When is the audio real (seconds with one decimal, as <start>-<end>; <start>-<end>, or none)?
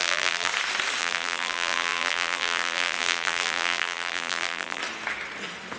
0.5-1.0; 4.8-5.8